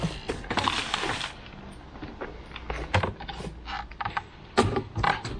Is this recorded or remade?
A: recorded